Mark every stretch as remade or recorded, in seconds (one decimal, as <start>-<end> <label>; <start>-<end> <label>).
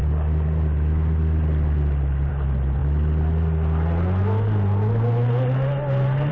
0.0-6.3 recorded